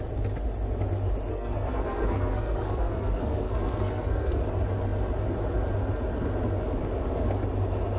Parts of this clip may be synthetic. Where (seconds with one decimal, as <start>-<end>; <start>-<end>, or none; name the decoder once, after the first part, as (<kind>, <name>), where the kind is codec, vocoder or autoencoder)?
1.3-4.4 (codec, SNAC)